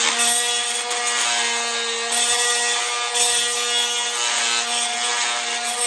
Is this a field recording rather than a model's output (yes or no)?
yes